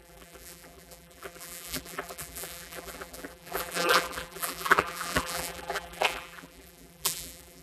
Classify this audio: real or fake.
fake